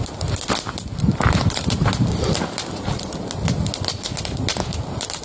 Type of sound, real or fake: real